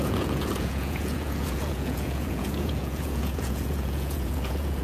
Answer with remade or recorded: remade